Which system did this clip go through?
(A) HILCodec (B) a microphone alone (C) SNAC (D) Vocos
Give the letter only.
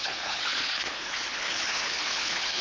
A